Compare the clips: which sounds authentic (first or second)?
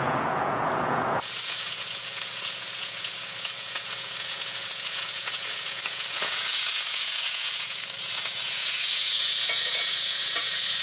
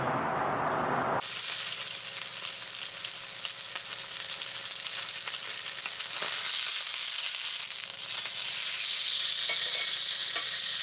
second